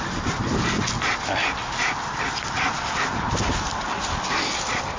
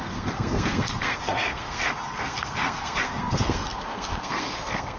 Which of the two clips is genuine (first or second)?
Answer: first